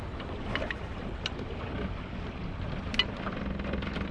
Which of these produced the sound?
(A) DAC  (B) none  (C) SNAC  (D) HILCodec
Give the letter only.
B